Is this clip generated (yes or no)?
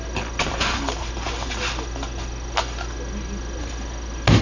no